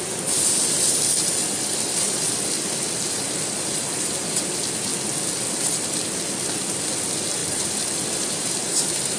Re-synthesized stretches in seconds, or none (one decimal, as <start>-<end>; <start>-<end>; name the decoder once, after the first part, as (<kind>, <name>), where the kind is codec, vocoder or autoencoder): 7.4-9.2 (vocoder, BigVGAN v2)

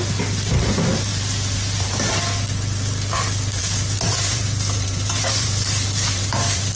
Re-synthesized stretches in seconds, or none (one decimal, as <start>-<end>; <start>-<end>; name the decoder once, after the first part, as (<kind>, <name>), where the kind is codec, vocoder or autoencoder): 1.1-2.1 (vocoder, BigVGAN v2); 3.6-6.8

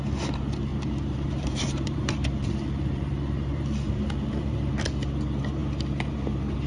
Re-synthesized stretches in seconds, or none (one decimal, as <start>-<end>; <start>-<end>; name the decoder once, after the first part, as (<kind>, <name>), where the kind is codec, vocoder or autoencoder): 0.7-4.7 (vocoder, BigVGAN v2)

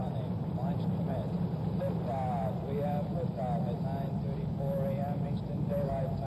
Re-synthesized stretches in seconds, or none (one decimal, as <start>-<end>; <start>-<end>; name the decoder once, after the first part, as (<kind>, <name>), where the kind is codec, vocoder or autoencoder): 0.0-1.8 (vocoder, BigVGAN v2)

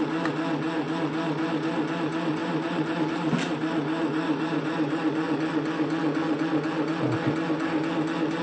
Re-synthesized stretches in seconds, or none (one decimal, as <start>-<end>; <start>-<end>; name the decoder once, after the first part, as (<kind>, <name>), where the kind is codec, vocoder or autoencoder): 2.4-3.0 (vocoder, BigVGAN v2); 3.6-5.1